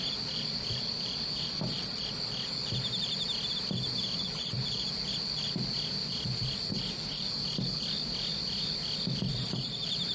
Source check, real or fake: real